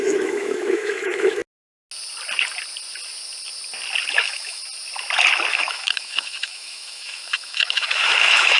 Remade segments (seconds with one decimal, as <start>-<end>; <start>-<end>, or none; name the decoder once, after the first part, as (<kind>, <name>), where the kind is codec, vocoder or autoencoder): 0.0-1.4 (autoencoder, DAC-VAE); 4.1-4.6; 5.5-8.6